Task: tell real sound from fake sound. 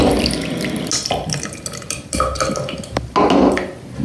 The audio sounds real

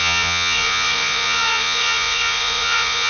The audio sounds fake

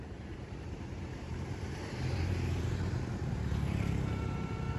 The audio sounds fake